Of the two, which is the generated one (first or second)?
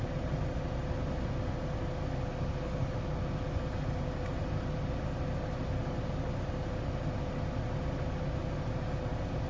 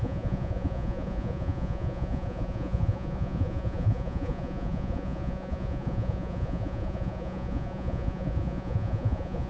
second